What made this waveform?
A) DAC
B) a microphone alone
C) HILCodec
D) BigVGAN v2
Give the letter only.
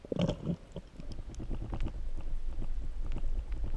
B